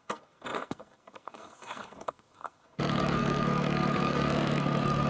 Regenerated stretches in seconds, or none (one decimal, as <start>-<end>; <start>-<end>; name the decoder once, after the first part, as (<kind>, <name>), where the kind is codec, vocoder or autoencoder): 0.0-5.1 (codec, SNAC)